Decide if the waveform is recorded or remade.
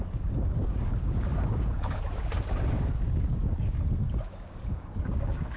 remade